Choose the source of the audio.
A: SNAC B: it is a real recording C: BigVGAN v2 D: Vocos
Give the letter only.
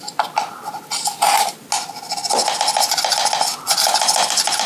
B